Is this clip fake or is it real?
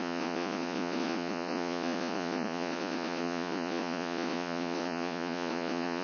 fake